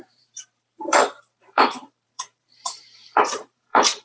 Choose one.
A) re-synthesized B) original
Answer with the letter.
A